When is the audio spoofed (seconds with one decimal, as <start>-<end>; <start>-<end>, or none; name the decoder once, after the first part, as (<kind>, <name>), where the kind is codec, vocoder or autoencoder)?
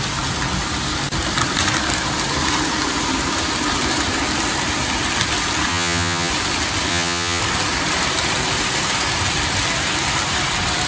5.7-6.3 (vocoder, HiFi-GAN); 6.9-7.4